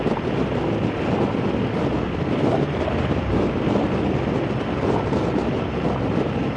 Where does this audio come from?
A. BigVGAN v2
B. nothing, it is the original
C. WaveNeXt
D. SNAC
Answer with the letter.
B